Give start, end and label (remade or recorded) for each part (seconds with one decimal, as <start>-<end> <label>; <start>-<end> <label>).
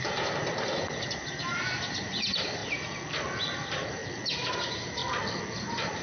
0.0-2.6 remade; 2.6-3.6 recorded; 3.6-4.0 remade; 4.0-4.5 recorded; 4.5-5.0 remade; 5.0-5.6 recorded; 5.6-6.0 remade